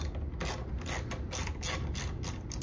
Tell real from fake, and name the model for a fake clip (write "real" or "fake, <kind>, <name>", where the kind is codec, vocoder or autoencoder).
real